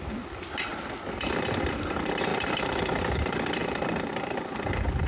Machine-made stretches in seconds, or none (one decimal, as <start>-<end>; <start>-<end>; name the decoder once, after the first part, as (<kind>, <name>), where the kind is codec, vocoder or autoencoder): 0.0-0.7 (vocoder, BigVGAN v2); 1.6-5.1